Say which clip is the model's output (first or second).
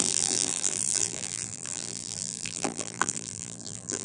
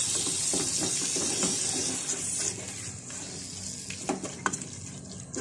first